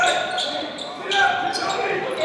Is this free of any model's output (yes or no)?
no